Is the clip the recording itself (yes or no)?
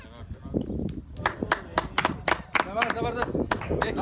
yes